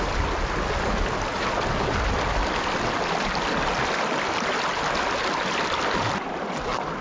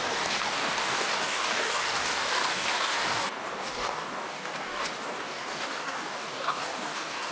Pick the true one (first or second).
first